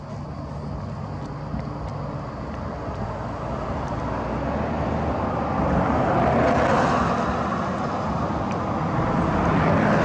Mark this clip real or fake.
real